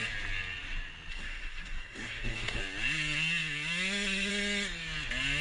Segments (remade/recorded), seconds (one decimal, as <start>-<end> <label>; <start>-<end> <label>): 0.0-1.1 recorded; 1.1-2.6 remade; 2.6-5.4 recorded

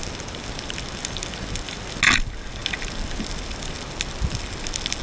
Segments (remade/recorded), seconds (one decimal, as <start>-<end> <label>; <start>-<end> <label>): 0.0-5.0 recorded

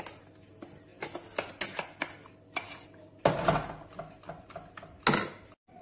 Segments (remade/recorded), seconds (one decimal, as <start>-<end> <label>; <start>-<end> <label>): 0.0-5.8 recorded

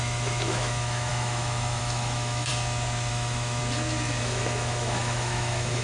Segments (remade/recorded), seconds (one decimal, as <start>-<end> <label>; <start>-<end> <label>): 0.0-2.5 remade; 2.5-3.1 recorded; 3.1-3.6 remade; 3.6-4.2 recorded; 4.2-5.8 remade

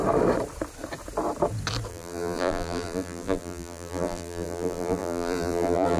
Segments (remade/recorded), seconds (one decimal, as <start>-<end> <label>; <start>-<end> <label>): 0.0-1.9 recorded; 1.9-6.0 remade

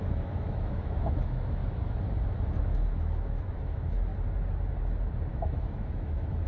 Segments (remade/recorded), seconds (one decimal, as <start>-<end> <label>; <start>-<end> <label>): 0.0-1.6 remade; 1.6-2.6 recorded; 2.6-4.1 remade; 4.1-5.3 recorded; 5.3-6.5 remade

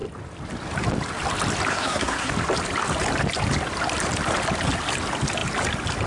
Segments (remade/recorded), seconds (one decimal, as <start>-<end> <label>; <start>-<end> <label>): 0.0-1.7 recorded; 1.7-2.3 remade; 2.3-6.1 recorded